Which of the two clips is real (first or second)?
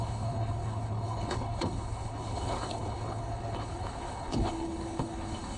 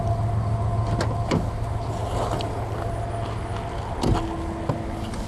second